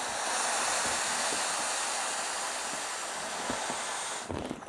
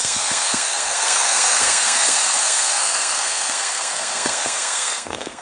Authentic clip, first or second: first